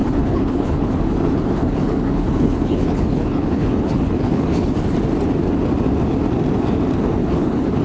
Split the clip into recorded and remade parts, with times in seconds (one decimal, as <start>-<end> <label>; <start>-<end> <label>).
0.0-4.7 remade; 4.7-7.2 recorded; 7.2-7.8 remade